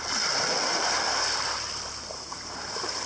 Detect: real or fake real